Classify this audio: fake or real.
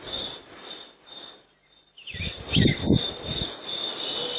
real